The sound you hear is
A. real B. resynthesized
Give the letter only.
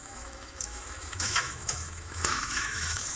B